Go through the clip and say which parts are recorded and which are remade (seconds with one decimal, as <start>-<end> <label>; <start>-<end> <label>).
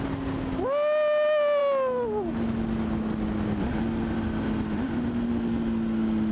0.0-6.3 recorded